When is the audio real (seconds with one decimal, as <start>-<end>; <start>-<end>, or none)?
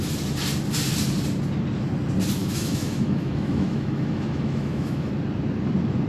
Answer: 0.0-2.4; 5.1-6.1